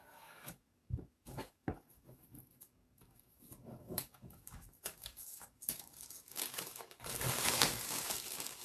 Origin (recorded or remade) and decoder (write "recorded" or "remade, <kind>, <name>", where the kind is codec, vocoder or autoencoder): remade, codec, DAC